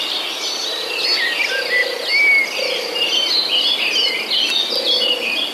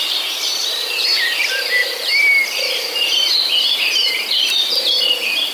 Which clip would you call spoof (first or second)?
second